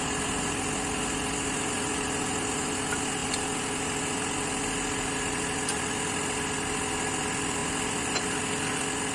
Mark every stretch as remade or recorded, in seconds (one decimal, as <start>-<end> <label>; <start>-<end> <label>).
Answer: 0.0-9.1 recorded